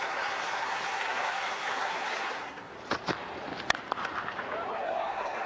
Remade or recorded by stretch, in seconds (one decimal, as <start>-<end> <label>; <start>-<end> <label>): 0.0-2.7 remade; 2.7-4.7 recorded; 4.7-5.5 remade